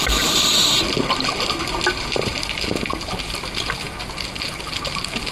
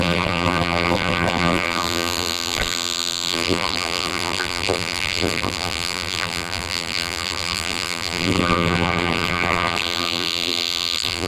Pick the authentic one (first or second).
first